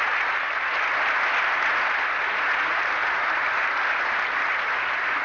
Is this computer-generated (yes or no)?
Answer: no